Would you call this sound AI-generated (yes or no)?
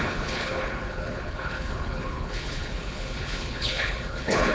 yes